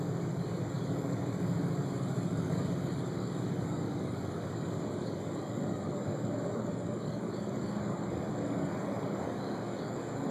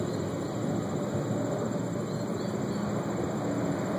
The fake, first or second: first